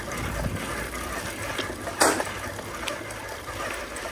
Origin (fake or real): fake